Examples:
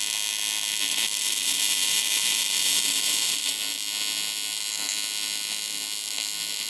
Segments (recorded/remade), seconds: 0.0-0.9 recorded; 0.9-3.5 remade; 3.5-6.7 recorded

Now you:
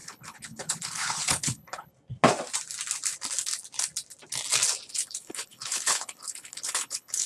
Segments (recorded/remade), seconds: 0.0-1.9 remade; 1.9-4.9 recorded; 4.9-7.3 remade

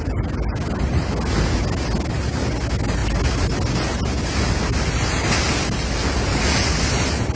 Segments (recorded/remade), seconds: 0.0-7.4 recorded

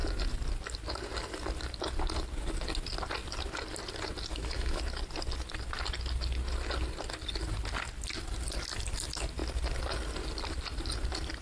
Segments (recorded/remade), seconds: 0.0-4.3 recorded; 4.3-4.8 remade; 4.8-11.4 recorded

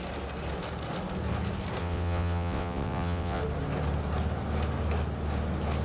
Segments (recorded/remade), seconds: 0.0-1.8 recorded; 1.8-3.4 remade; 3.4-5.8 recorded

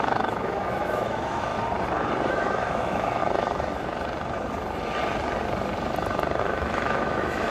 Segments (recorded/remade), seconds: 0.0-1.5 remade; 1.5-2.3 recorded; 2.3-3.2 remade; 3.2-6.4 recorded; 6.4-7.5 remade

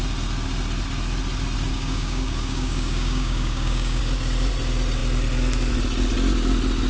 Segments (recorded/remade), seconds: 0.0-1.7 recorded; 1.7-4.0 remade; 4.0-6.9 recorded

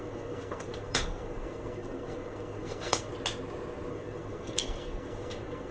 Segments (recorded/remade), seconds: 0.0-3.1 remade; 3.1-3.9 recorded; 3.9-5.7 remade